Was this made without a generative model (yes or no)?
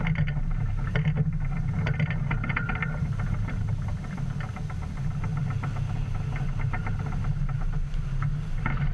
yes